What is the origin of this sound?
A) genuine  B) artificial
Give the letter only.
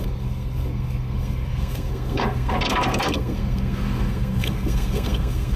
B